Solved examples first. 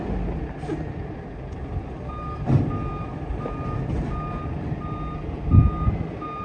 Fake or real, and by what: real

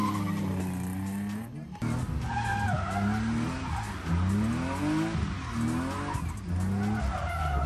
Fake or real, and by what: real